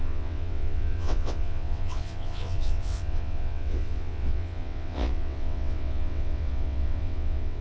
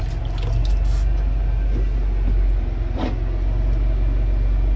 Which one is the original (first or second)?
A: second